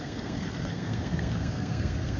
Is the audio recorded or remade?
remade